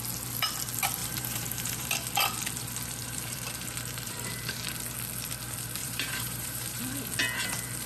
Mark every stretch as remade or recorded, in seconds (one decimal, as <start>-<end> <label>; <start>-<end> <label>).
0.0-1.0 recorded; 1.0-1.9 remade; 1.9-3.0 recorded; 3.0-4.3 remade; 4.3-5.8 recorded; 5.8-6.8 remade; 6.8-7.9 recorded